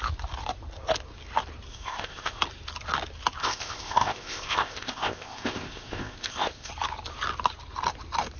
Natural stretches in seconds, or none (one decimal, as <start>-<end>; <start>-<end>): 0.0-1.7; 2.4-3.4; 6.7-8.4